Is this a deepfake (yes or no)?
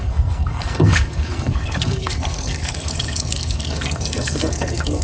yes